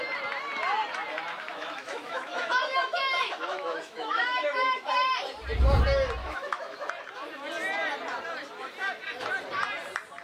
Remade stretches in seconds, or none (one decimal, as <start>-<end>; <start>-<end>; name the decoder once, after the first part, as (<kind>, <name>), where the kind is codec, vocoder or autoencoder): 1.5-4.9 (autoencoder, DAC-VAE); 6.2-6.9

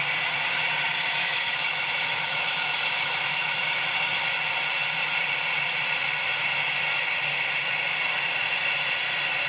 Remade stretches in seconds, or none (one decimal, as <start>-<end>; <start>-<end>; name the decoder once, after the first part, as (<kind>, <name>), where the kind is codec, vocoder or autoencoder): 1.2-3.8 (autoencoder, DAC-VAE)

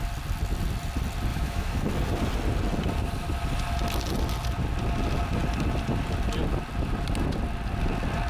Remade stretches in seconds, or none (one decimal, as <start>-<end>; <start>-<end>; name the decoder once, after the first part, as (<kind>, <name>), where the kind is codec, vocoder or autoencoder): 1.3-1.8 (autoencoder, DAC-VAE)

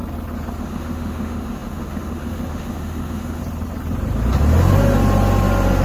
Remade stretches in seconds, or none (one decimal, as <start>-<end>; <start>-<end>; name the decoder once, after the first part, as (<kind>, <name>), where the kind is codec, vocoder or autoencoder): 0.6-3.4 (autoencoder, DAC-VAE)

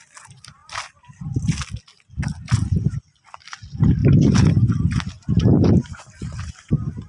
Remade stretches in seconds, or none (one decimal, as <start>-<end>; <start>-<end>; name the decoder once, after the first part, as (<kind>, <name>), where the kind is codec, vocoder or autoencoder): none

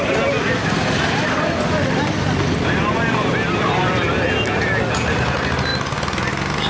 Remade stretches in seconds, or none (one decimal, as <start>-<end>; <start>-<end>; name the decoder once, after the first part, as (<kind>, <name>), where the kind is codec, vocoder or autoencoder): none